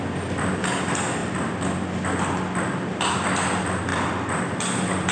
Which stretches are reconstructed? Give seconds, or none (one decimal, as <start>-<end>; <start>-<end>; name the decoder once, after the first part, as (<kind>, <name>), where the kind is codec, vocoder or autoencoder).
none